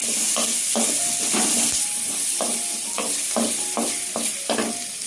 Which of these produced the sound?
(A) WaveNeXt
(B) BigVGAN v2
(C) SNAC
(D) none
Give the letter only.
D